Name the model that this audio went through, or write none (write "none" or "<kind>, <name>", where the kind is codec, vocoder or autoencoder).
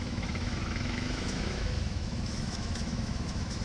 autoencoder, DAC-VAE